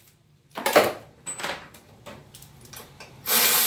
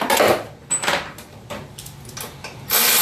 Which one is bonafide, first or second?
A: second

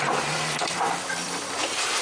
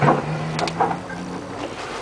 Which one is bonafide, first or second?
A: second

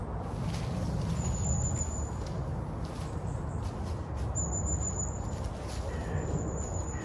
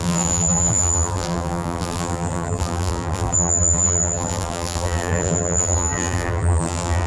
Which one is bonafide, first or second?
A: first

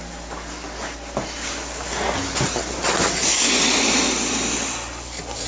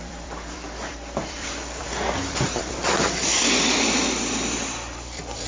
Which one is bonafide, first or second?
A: first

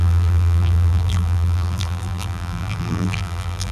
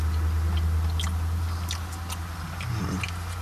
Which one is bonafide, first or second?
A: second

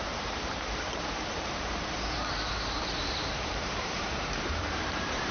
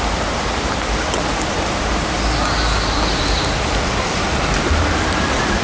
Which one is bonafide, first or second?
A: second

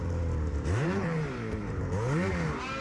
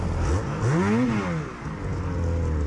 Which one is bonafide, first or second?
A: second